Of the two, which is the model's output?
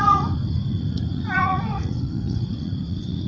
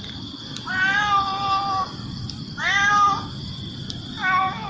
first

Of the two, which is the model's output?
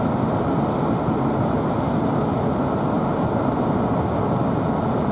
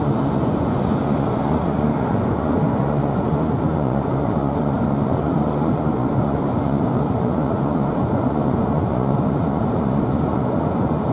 second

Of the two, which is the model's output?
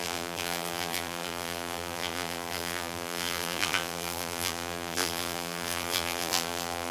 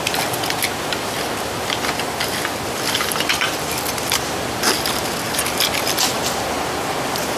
first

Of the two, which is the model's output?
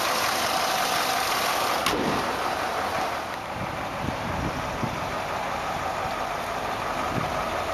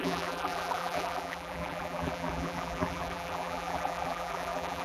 second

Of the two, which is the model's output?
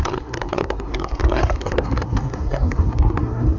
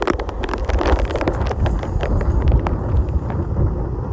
first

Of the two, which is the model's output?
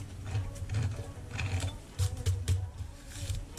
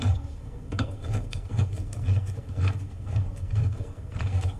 second